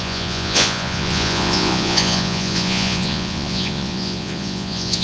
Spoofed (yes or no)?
yes